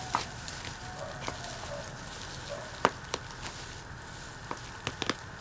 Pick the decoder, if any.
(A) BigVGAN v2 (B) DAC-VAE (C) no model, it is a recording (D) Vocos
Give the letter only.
C